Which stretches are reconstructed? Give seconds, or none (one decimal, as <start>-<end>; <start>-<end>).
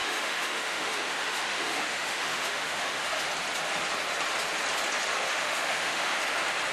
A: 0.0-3.2; 5.3-6.2